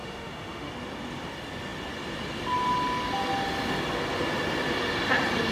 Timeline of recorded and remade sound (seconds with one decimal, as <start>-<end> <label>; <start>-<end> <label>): 0.0-0.7 remade; 0.7-5.5 recorded